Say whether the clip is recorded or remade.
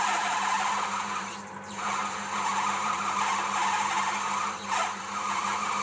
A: remade